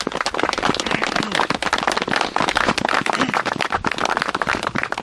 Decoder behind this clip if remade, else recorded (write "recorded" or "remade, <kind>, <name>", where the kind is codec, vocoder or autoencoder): recorded